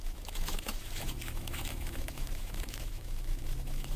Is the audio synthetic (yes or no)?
yes